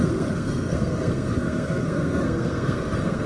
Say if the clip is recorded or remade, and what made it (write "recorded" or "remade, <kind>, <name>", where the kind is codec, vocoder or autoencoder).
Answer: remade, codec, SNAC